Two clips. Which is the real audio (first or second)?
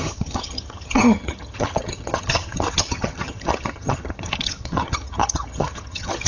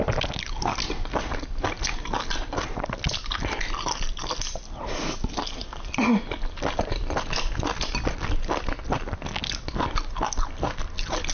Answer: second